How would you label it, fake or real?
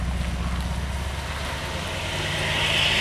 real